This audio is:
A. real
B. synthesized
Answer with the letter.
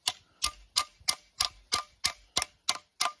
A